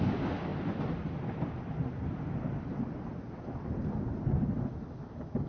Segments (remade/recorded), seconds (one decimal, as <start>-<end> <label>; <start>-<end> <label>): 0.0-5.5 recorded